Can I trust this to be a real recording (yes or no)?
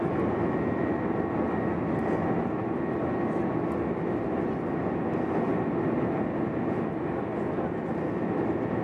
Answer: yes